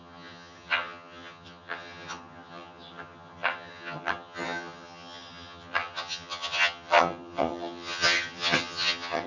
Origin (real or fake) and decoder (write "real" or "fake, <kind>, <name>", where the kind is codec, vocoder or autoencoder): fake, vocoder, HiFi-GAN